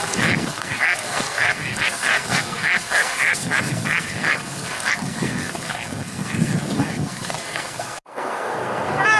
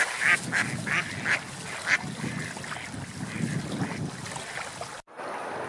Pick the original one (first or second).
second